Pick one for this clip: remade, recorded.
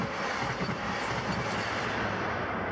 recorded